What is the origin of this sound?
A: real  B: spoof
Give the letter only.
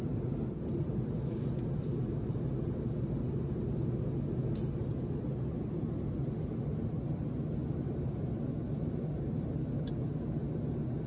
A